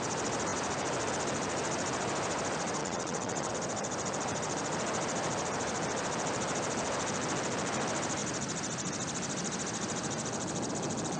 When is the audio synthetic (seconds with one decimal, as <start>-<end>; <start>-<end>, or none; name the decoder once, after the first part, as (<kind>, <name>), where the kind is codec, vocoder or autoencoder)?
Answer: 2.8-3.5 (vocoder, WaveNeXt)